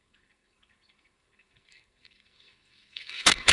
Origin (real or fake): fake